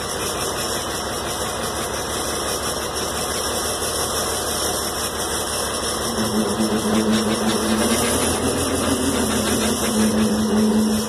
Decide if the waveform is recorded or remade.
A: recorded